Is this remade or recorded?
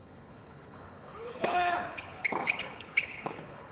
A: remade